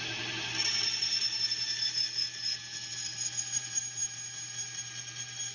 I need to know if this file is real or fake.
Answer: real